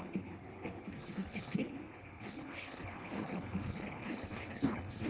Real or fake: fake